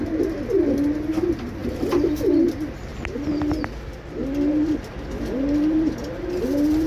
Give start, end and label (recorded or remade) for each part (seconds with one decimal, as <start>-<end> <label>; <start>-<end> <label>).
0.0-1.6 recorded; 1.6-2.4 remade; 2.4-6.9 recorded